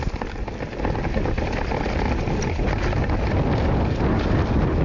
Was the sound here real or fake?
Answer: real